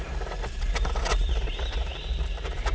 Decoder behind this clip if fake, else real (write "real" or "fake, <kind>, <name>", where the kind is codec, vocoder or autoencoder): fake, vocoder, BigVGAN v2